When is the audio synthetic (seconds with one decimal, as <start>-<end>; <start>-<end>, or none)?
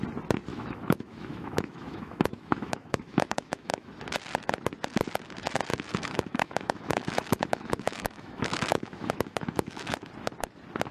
0.5-3.9; 5.7-10.1